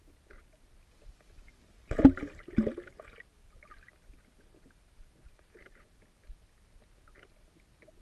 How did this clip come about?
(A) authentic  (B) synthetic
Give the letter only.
A